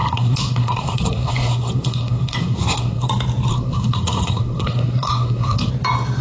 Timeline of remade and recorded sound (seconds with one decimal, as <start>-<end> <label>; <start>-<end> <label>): 0.0-3.1 remade; 3.1-3.5 recorded; 3.5-5.7 remade; 5.7-6.2 recorded